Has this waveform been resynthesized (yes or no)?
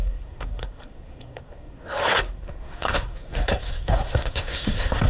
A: yes